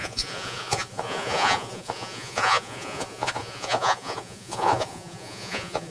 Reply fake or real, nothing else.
fake